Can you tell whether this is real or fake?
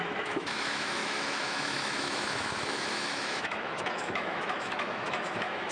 fake